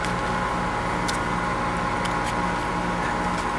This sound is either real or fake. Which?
real